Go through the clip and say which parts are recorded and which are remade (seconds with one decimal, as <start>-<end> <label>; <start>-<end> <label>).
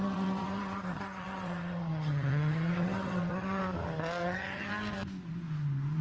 0.0-3.6 remade; 3.6-4.2 recorded; 4.2-4.7 remade; 4.7-6.0 recorded